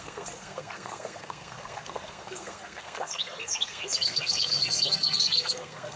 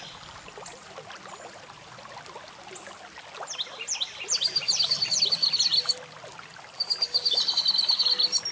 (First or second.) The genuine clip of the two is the second